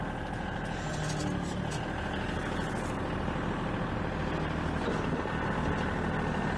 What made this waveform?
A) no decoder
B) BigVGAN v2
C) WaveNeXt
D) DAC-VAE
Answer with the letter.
A